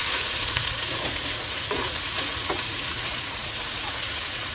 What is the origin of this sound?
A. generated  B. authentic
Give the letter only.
A